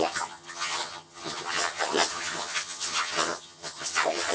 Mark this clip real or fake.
fake